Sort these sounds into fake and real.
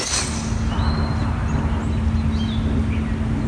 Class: real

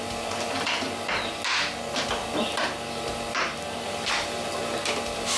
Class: real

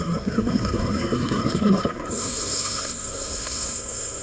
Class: fake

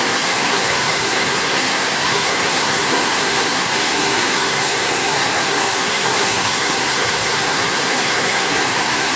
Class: fake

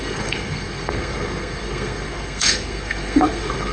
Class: fake